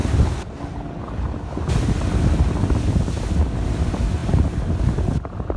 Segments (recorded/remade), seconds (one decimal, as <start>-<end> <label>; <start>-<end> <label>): 0.0-5.6 recorded